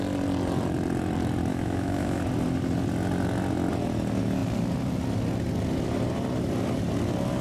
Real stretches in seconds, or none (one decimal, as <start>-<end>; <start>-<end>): 0.0-1.5; 2.2-7.4